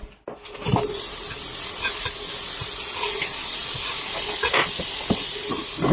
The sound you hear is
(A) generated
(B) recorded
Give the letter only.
B